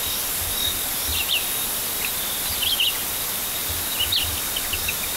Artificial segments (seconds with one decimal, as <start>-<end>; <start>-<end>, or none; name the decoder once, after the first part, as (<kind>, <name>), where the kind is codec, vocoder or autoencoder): none